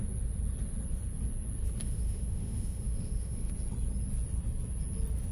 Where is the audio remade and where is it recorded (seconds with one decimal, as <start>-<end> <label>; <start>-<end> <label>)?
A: 0.0-1.8 recorded; 1.8-3.5 remade; 3.5-5.3 recorded